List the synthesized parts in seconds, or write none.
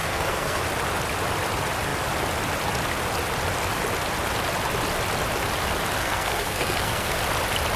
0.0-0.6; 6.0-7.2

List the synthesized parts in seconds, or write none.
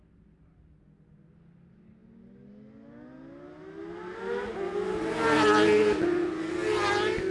none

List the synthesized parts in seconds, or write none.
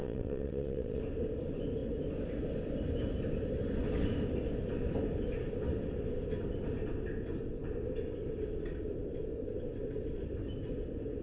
0.0-1.0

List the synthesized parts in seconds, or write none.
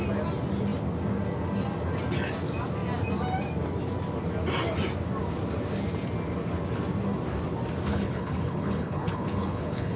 7.9-10.0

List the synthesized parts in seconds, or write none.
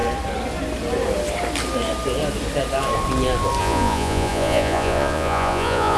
3.6-6.0